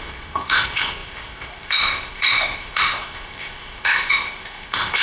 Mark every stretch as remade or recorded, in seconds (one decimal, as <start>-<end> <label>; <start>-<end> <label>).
0.0-5.0 remade